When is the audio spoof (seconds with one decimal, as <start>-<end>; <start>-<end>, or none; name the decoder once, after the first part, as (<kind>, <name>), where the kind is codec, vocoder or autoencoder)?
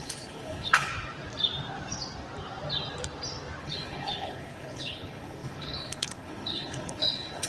0.0-0.9 (codec, HILCodec); 3.6-7.5